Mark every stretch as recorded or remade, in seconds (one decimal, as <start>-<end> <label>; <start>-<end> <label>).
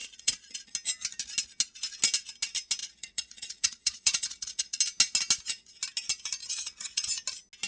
0.0-0.7 remade; 0.7-2.8 recorded; 2.8-4.8 remade; 4.8-6.4 recorded; 6.4-7.2 remade; 7.2-7.7 recorded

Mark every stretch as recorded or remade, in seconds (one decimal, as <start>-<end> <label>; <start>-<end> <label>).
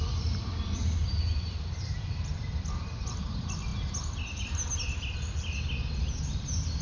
0.0-1.0 recorded; 1.0-2.6 remade; 2.6-6.8 recorded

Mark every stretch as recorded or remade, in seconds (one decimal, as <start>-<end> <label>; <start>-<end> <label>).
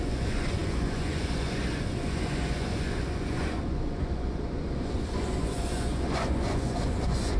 0.0-7.4 remade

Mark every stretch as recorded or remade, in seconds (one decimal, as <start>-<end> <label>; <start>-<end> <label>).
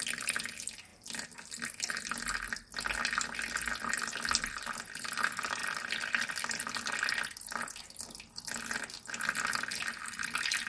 0.0-10.7 recorded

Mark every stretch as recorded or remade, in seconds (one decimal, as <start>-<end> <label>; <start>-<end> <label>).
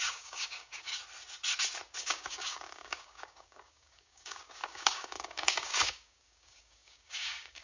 0.0-0.9 remade; 0.9-2.0 recorded; 2.0-7.6 remade